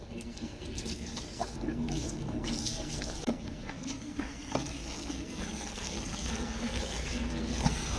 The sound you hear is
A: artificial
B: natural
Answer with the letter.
A